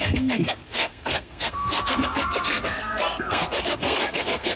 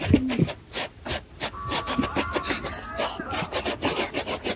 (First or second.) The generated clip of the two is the first